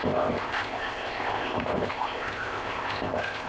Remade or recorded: remade